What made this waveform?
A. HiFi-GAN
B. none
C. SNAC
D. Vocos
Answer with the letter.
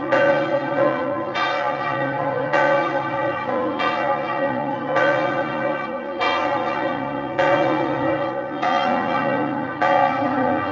D